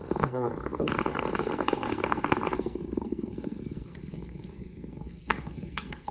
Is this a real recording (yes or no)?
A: no